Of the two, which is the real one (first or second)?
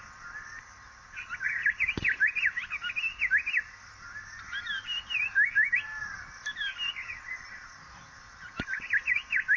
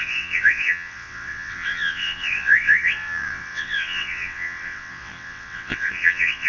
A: first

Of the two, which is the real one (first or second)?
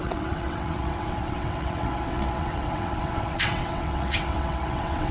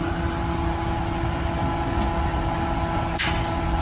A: second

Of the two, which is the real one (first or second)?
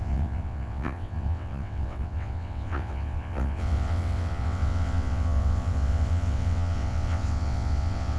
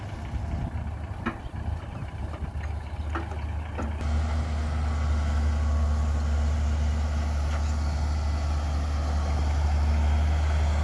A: second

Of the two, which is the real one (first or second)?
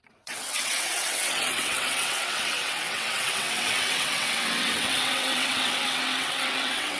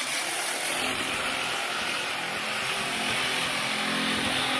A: second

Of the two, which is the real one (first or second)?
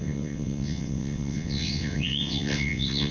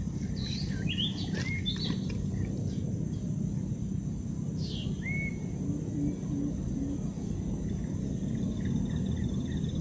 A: second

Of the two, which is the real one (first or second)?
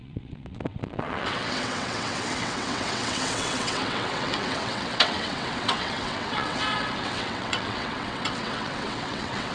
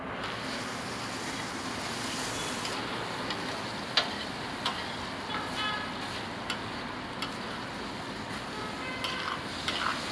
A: second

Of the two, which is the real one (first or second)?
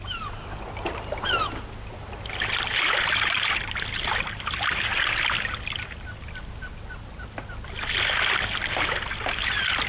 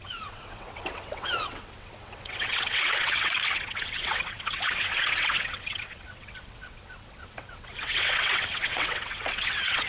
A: first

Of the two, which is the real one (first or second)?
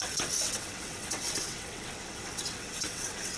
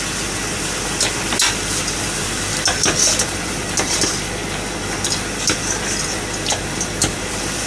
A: second